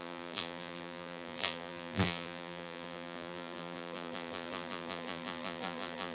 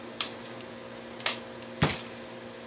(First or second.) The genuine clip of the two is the second